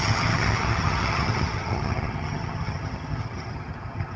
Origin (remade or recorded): remade